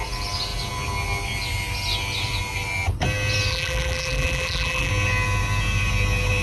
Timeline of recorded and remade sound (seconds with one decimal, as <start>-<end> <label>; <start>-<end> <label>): 0.0-3.5 recorded; 3.5-4.9 remade; 4.9-6.4 recorded